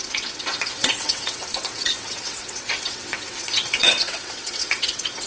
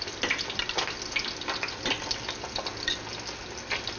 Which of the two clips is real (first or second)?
second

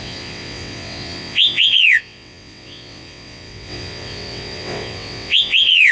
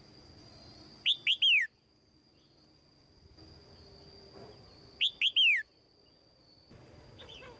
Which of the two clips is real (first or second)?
second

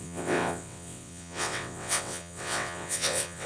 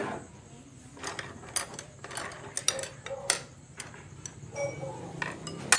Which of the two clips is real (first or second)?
second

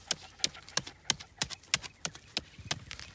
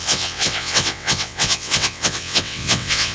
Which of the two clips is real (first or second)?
first